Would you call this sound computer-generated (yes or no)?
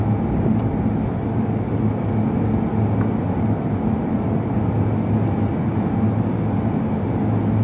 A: no